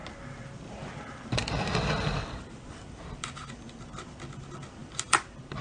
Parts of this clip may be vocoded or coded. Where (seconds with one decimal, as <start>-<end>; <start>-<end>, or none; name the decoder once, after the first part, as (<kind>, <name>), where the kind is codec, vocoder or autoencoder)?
0.0-3.4 (vocoder, BigVGAN v2); 4.8-5.6